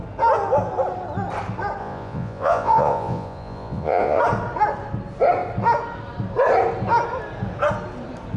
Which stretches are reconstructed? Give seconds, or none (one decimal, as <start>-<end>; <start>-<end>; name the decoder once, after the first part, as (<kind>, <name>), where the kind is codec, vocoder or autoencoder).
1.8-4.2 (vocoder, Vocos)